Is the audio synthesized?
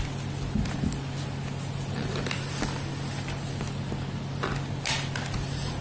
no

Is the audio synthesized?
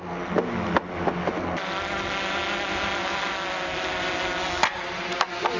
no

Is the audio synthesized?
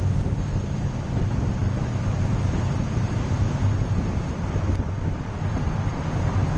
yes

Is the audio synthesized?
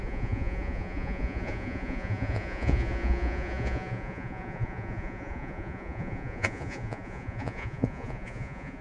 yes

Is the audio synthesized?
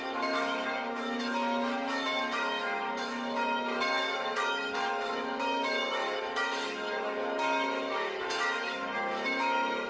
yes